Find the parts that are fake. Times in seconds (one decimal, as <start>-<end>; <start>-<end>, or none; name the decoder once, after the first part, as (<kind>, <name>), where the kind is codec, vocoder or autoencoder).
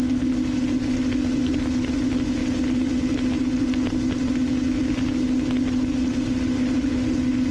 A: none